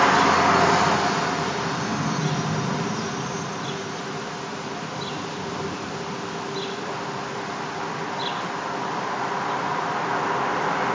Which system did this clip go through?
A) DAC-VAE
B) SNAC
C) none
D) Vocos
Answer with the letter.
C